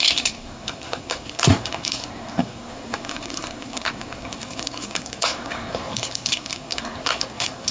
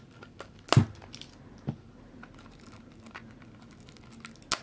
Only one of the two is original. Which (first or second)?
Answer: second